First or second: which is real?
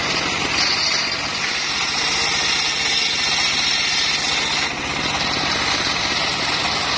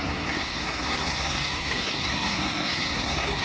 first